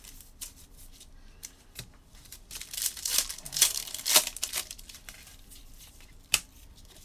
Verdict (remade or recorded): remade